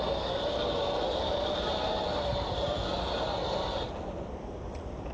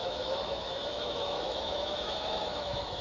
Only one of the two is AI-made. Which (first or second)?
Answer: second